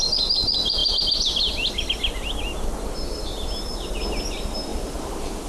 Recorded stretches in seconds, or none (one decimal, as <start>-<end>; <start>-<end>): 0.0-0.8; 1.9-4.7

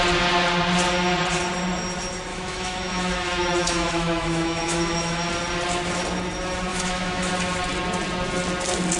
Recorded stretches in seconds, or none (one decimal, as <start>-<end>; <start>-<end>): 0.0-2.3; 5.3-6.7; 7.3-9.0

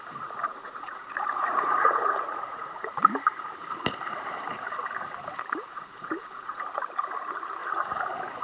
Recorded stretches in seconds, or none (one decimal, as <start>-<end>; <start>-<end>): 0.0-0.4; 2.9-5.7; 6.6-8.4

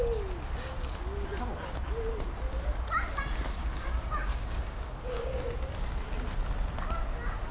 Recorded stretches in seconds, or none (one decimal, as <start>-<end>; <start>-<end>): 0.0-3.6; 5.5-7.5

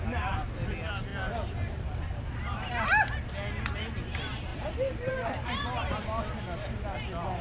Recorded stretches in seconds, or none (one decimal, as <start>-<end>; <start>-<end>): 0.0-4.5; 6.2-7.4